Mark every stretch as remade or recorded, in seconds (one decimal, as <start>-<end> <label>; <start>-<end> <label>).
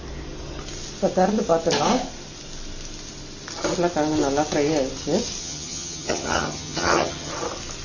0.0-5.4 recorded; 5.4-7.3 remade; 7.3-7.8 recorded